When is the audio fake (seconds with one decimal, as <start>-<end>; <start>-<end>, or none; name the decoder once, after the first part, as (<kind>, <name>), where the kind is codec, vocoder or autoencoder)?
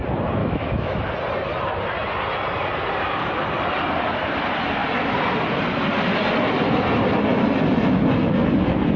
0.4-1.0 (autoencoder, DAC-VAE)